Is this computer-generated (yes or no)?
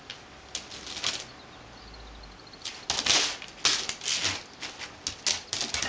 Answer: no